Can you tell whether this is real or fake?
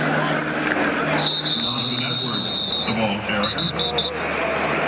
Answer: real